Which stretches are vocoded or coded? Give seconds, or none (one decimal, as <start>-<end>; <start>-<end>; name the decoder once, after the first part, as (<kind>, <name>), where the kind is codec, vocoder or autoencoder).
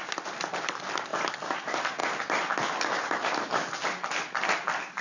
none